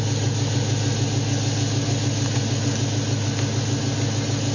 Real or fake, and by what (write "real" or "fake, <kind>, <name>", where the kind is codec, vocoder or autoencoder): real